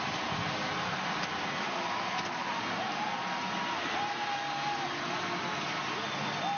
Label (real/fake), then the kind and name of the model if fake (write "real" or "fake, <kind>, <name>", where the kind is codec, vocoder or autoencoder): real